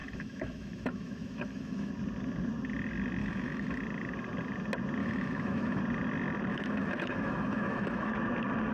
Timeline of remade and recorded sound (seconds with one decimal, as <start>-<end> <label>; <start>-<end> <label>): 0.0-1.9 remade; 1.9-3.2 recorded; 3.2-3.8 remade; 3.8-5.0 recorded; 5.0-5.8 remade; 5.8-6.5 recorded; 6.5-8.1 remade; 8.1-8.7 recorded